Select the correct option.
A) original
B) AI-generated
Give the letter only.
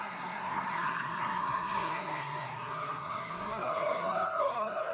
B